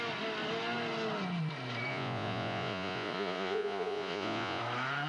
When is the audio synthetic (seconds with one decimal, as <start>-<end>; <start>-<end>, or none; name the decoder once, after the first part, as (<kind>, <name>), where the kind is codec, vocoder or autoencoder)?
1.9-4.6 (vocoder, Vocos)

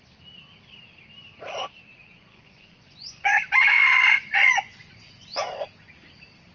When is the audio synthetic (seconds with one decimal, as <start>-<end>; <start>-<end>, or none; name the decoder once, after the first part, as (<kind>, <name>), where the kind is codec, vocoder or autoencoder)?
2.0-5.9 (vocoder, Vocos)

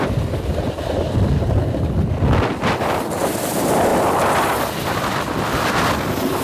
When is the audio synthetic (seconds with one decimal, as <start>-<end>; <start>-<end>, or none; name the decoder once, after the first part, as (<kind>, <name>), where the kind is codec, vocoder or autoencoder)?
none

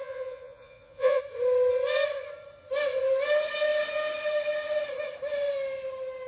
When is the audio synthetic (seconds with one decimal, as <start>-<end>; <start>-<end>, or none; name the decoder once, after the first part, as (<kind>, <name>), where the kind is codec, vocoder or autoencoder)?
0.0-1.2 (vocoder, Vocos)

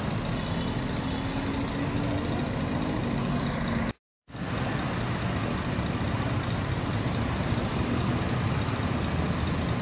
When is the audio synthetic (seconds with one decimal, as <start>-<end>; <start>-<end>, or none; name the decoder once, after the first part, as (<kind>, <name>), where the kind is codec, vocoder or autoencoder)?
none